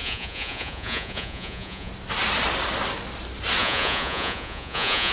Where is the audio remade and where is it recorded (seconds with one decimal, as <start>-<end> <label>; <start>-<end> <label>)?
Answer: 0.0-1.9 remade; 1.9-3.6 recorded; 3.6-5.1 remade